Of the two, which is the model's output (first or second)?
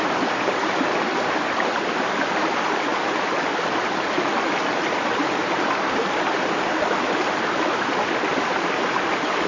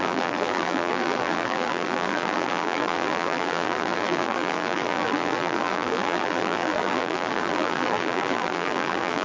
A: second